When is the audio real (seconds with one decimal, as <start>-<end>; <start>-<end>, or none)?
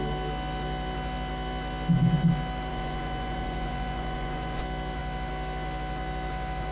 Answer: 0.0-2.7; 4.6-6.7